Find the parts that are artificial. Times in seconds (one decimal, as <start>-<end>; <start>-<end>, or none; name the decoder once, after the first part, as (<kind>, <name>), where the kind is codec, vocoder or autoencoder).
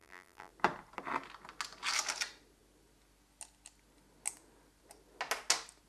0.0-0.5 (vocoder, BigVGAN v2)